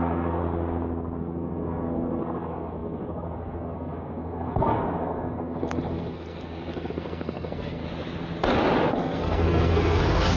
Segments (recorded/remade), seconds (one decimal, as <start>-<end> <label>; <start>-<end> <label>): 0.0-0.4 remade; 0.4-1.2 recorded; 1.2-7.8 remade; 7.8-8.9 recorded; 8.9-10.4 remade